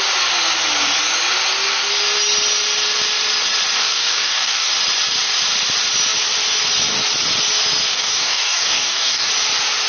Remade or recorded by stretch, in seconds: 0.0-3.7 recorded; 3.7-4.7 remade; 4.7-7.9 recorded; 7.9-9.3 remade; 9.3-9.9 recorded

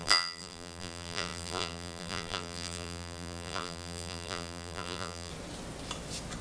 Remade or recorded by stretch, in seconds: 0.0-5.3 remade; 5.3-6.4 recorded

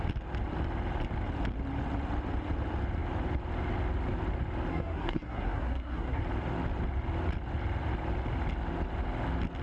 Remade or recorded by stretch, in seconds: 0.0-4.7 recorded; 4.7-6.2 remade; 6.2-9.6 recorded

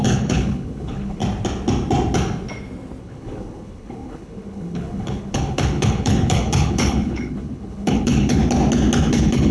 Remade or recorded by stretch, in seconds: 0.0-1.2 remade; 1.2-3.0 recorded; 3.0-8.4 remade; 8.4-9.1 recorded; 9.1-9.5 remade